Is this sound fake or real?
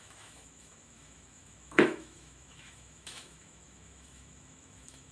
fake